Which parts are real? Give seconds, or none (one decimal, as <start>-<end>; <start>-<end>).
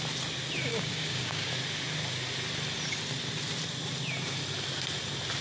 0.0-0.7; 1.5-5.4